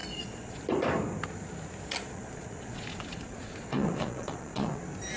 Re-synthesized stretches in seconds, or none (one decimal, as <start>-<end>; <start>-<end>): 0.0-0.6; 2.0-4.8